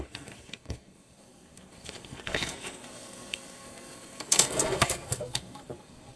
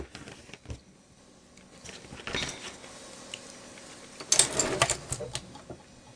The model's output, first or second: first